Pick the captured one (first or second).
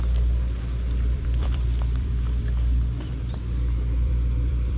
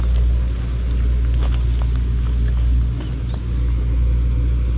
second